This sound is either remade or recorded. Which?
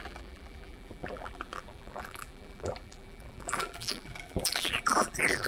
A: remade